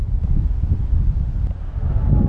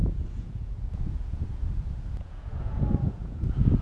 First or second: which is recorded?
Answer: first